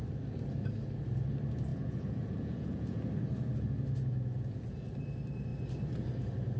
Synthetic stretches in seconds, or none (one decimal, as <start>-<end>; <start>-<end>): 1.7-3.1; 4.1-4.9